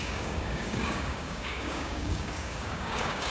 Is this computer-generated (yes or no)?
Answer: yes